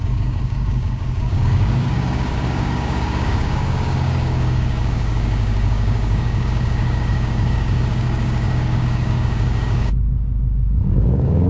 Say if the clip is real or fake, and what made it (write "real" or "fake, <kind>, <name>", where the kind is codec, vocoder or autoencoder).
fake, codec, DAC